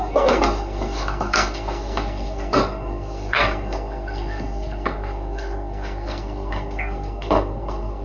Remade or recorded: remade